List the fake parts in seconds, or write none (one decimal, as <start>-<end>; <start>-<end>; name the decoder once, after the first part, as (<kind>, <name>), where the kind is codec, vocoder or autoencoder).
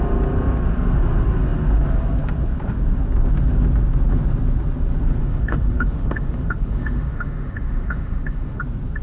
5.2-8.6 (autoencoder, DAC-VAE)